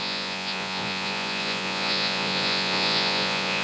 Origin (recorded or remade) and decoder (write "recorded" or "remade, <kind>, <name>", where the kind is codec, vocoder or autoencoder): remade, vocoder, Vocos